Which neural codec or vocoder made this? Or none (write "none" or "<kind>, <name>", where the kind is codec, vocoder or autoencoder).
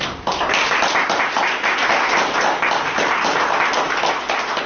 none